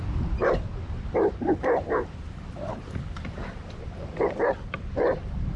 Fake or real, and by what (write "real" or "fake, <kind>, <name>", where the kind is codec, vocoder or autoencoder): fake, vocoder, BigVGAN v2